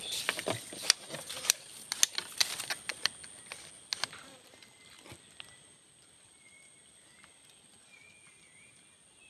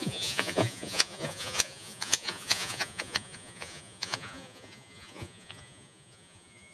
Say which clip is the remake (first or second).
second